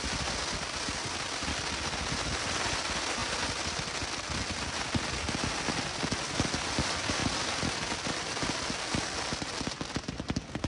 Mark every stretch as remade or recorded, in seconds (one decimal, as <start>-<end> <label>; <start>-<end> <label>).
0.0-10.7 recorded